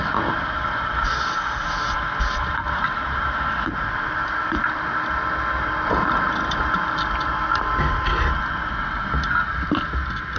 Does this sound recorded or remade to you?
recorded